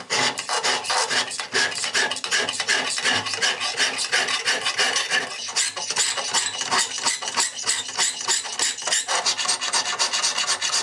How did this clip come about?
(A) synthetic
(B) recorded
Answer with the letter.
B